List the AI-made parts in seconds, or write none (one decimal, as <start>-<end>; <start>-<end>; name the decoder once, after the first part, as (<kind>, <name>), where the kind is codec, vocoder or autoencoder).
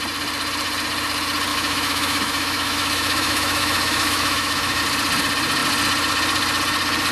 1.5-4.8 (autoencoder, DAC-VAE)